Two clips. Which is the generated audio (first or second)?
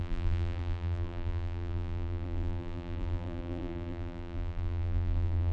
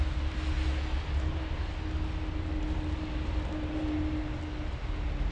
first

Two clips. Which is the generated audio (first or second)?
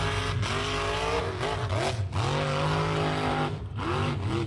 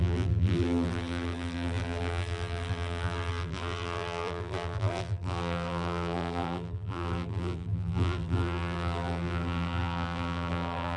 second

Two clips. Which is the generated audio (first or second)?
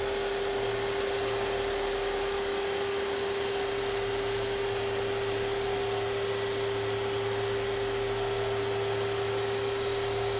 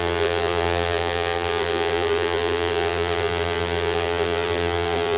second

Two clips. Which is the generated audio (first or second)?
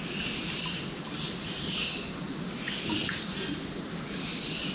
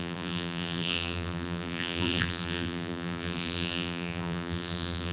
second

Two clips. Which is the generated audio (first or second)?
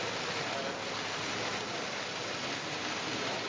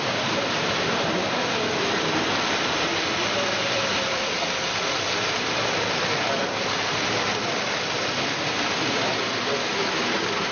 second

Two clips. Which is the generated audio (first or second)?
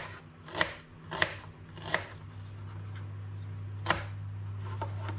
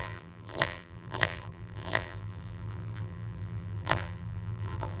second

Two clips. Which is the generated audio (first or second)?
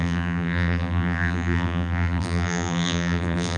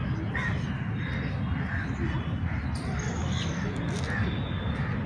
first